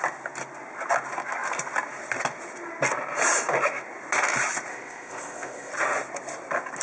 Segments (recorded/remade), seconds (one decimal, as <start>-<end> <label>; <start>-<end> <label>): 0.0-4.7 recorded; 4.7-5.7 remade; 5.7-6.8 recorded

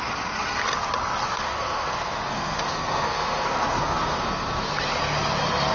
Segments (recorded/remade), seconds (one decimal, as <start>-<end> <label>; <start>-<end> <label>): 0.0-1.3 recorded; 1.3-4.7 remade; 4.7-5.7 recorded